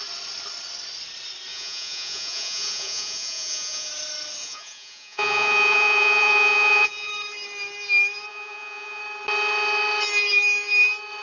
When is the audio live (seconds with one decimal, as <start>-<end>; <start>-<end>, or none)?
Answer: 0.0-1.5; 3.9-4.4; 7.1-8.3; 9.0-11.2